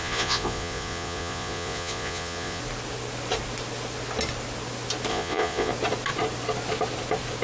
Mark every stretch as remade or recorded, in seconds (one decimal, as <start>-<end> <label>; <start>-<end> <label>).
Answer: 0.0-2.6 remade; 2.6-5.1 recorded; 5.1-5.7 remade; 5.7-7.4 recorded